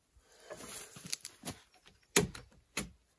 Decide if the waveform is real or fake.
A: real